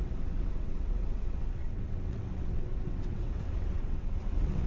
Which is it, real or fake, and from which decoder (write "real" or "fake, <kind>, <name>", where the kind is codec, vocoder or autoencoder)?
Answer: fake, vocoder, WaveNeXt